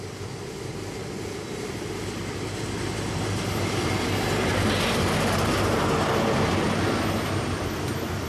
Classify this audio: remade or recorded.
recorded